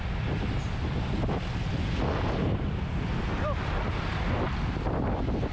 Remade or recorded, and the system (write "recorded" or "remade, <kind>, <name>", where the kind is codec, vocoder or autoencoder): recorded